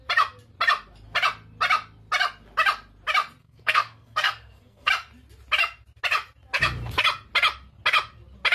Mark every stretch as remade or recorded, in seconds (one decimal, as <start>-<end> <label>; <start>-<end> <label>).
0.0-3.4 recorded; 3.4-4.9 remade; 4.9-8.5 recorded